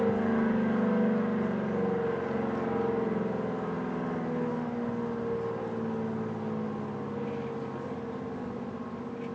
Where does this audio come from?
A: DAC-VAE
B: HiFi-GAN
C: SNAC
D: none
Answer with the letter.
D